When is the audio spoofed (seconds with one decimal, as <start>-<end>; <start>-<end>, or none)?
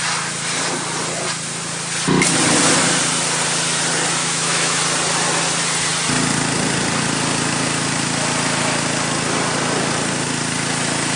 4.2-4.8